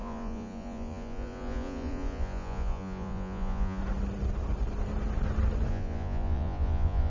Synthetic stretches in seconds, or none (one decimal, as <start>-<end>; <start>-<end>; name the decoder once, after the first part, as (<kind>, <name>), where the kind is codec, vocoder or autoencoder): 0.0-3.8 (vocoder, Vocos); 5.7-7.1